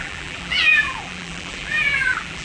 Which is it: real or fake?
fake